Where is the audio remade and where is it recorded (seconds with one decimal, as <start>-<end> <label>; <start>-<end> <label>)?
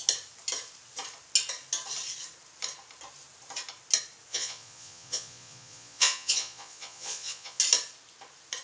0.0-4.3 recorded; 4.3-7.6 remade; 7.6-8.6 recorded